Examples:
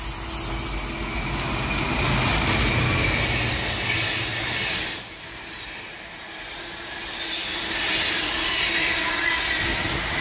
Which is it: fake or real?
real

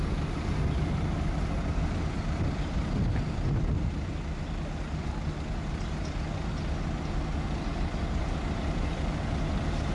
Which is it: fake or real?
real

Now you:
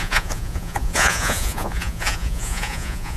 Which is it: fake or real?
fake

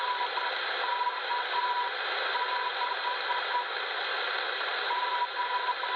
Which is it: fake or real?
real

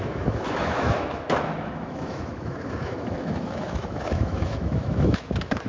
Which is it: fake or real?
fake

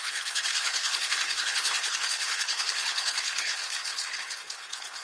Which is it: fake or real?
fake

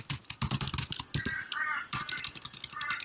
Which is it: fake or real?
real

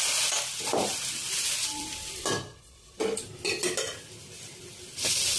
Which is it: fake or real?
real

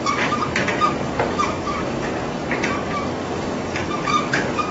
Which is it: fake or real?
fake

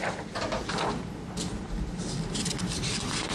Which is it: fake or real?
fake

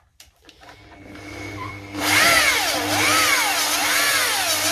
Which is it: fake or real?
fake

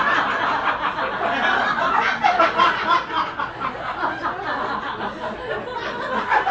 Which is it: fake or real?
real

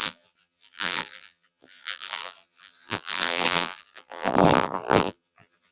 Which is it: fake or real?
fake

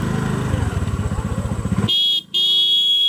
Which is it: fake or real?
real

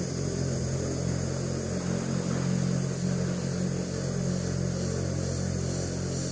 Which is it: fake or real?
real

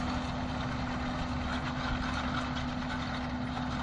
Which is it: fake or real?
real